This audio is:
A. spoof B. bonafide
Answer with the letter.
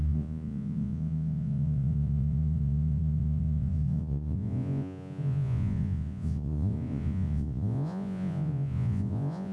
A